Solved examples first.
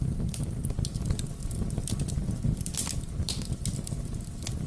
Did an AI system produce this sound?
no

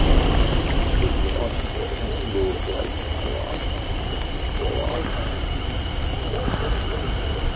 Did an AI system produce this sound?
no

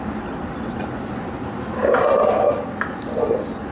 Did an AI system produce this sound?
no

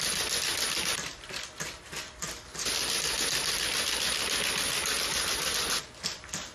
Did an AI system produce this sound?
no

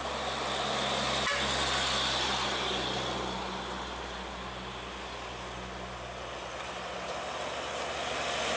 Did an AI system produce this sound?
no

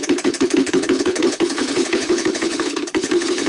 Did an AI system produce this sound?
yes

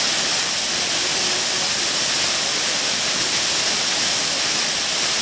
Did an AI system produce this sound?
no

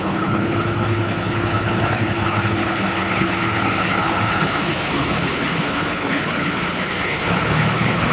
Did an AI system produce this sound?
yes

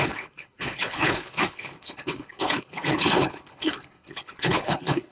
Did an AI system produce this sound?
yes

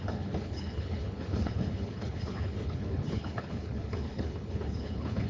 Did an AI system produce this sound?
yes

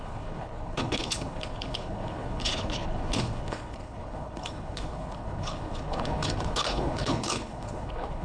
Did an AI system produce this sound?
yes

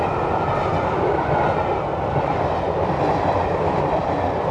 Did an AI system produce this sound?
no